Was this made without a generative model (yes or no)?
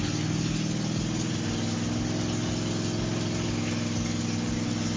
yes